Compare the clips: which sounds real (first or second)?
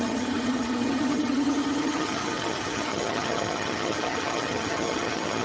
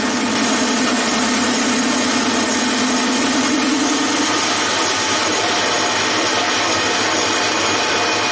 second